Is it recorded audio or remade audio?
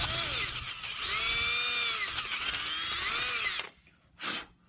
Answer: recorded